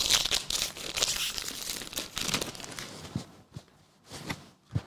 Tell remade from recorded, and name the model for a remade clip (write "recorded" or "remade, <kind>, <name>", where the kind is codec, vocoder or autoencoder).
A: recorded